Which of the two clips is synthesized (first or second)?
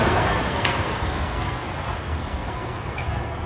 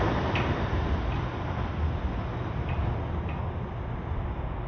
first